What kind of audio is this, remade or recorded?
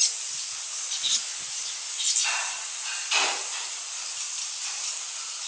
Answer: recorded